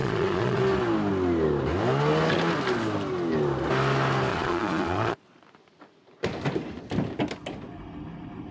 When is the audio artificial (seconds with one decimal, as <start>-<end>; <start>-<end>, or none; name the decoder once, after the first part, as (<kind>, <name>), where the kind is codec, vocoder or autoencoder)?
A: 0.0-0.6 (vocoder, Vocos); 4.3-5.4